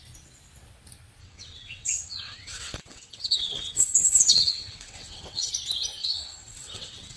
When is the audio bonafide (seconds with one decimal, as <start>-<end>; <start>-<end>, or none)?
0.0-1.2; 5.5-6.0